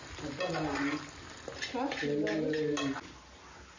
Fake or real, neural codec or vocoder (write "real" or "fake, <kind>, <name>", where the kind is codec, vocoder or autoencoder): real